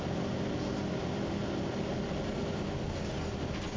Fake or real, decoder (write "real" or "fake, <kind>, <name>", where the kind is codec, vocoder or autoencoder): real